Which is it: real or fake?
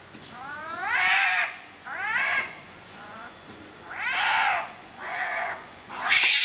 fake